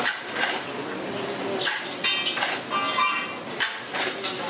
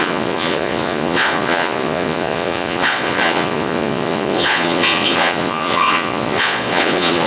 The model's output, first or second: second